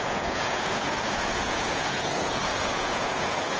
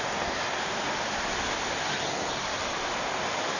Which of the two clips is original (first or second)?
second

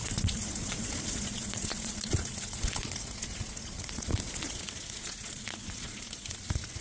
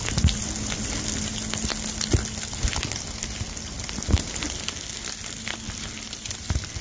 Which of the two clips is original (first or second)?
second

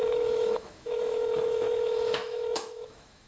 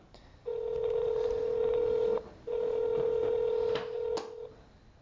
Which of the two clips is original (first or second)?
second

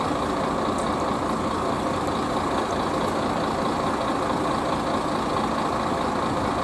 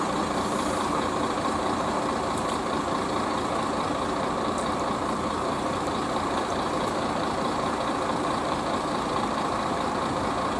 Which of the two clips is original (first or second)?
first